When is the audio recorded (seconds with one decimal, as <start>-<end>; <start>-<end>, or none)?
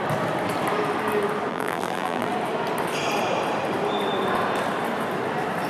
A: 0.0-1.5; 2.3-5.7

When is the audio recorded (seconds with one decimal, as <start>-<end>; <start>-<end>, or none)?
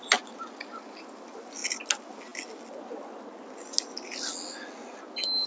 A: 0.0-5.5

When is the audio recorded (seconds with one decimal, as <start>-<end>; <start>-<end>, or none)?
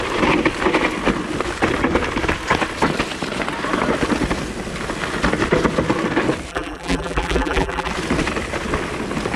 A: 0.0-6.5; 7.9-9.4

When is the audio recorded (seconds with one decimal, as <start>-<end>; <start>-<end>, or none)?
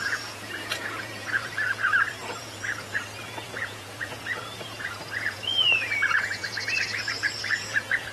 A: none